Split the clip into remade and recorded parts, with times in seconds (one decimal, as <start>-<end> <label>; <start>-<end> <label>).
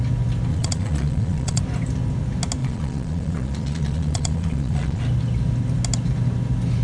0.0-0.5 recorded; 0.5-1.6 remade; 1.6-2.6 recorded; 2.6-5.0 remade; 5.0-6.8 recorded